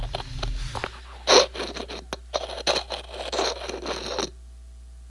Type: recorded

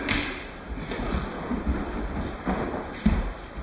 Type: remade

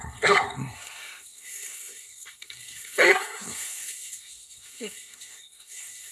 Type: remade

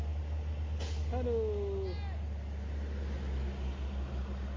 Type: recorded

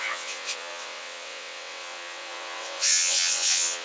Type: remade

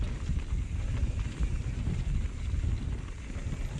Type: recorded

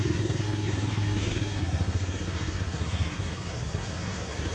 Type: remade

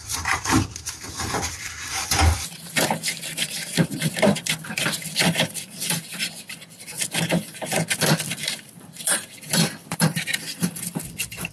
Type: remade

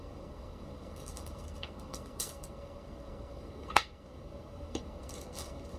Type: remade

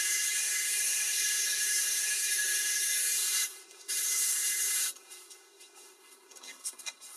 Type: remade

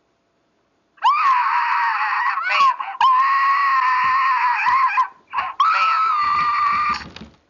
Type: recorded